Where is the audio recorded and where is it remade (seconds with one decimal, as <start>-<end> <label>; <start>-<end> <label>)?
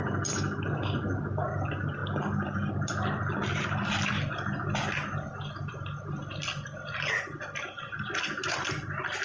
0.0-9.2 recorded